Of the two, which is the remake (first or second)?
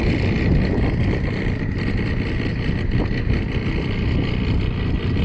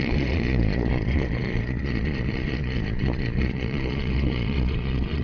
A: second